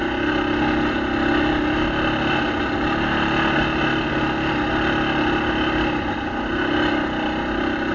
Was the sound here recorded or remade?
recorded